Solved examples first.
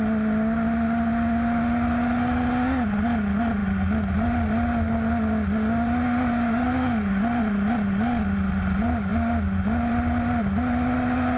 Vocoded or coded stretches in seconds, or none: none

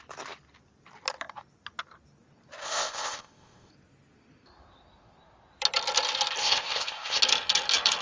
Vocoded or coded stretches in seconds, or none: 2.6-3.7 (codec, ZipCodec); 6.4-7.2